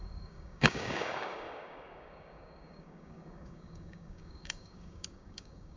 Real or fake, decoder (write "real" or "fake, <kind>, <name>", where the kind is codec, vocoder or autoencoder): fake, codec, DAC